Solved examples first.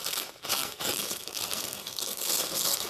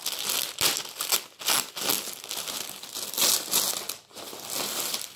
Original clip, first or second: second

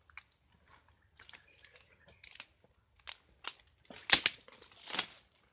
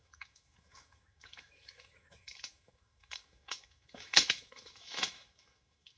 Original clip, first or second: first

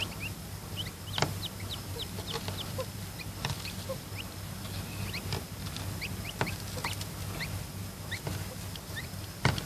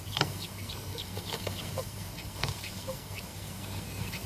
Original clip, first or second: first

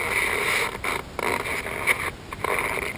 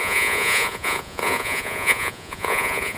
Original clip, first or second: first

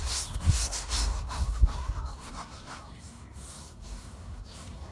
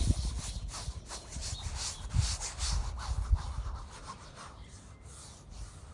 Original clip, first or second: second